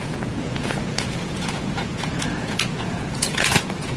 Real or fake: fake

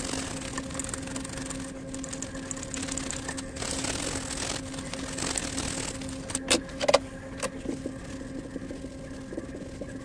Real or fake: real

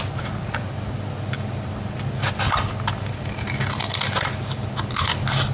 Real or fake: real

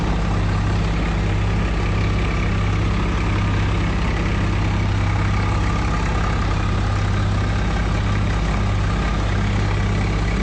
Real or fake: real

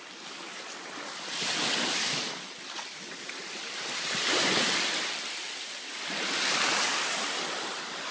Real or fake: real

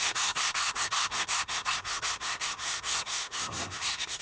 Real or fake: fake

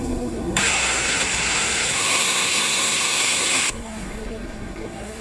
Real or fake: fake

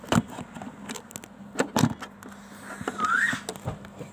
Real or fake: real